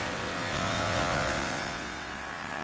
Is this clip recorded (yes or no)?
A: no